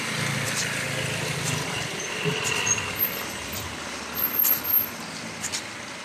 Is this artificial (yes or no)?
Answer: no